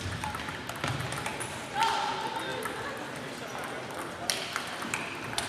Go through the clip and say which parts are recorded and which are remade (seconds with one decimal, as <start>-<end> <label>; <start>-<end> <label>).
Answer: 0.0-5.5 recorded